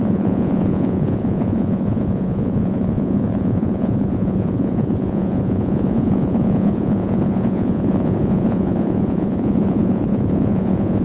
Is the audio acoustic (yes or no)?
no